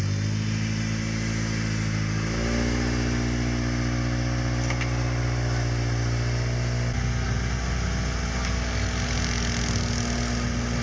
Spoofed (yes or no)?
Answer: no